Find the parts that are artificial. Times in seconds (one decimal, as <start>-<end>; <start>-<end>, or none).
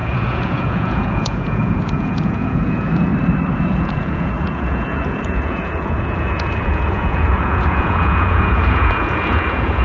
0.0-3.1; 3.6-9.8